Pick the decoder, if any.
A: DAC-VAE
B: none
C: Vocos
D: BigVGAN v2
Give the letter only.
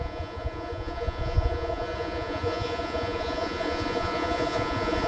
C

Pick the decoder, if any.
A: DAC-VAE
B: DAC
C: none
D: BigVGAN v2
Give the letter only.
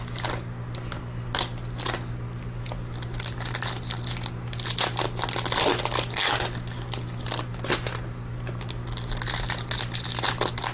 C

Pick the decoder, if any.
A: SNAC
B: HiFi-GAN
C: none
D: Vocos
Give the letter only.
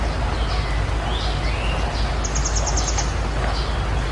C